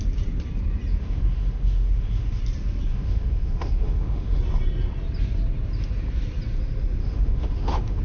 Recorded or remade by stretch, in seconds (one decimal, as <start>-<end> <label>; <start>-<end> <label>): 0.0-1.0 recorded; 1.0-2.4 remade; 2.4-2.9 recorded; 2.9-4.4 remade; 4.4-7.0 recorded; 7.0-8.0 remade